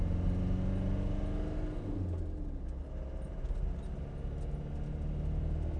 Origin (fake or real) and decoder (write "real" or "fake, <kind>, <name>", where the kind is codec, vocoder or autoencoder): real